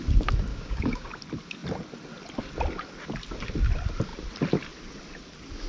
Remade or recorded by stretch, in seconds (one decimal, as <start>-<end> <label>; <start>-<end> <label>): 0.0-0.5 recorded; 0.5-1.1 remade; 1.1-5.7 recorded

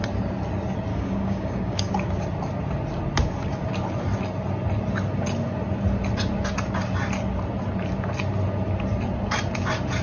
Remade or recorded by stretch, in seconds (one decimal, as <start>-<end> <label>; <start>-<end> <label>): 0.0-0.9 recorded; 0.9-1.9 remade; 1.9-10.0 recorded

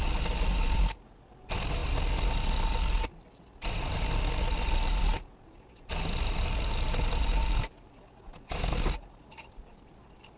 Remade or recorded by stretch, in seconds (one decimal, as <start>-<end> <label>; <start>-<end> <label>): 0.0-10.4 recorded

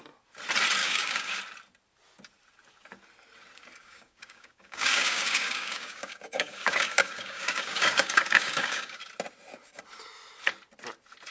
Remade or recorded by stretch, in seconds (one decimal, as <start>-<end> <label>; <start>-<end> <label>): 0.0-0.8 recorded; 0.8-1.4 remade; 1.4-3.8 recorded; 3.8-9.0 remade; 9.0-11.3 recorded

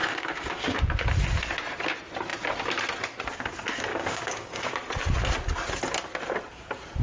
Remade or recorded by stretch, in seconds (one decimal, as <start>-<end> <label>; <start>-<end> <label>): 0.0-0.8 remade; 0.8-3.9 recorded; 3.9-4.7 remade; 4.7-7.0 recorded

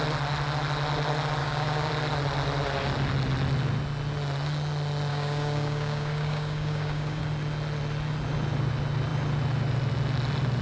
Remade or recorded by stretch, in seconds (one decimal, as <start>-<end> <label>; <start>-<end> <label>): 0.0-1.4 recorded; 1.4-1.9 remade; 1.9-5.1 recorded; 5.1-7.2 remade; 7.2-10.6 recorded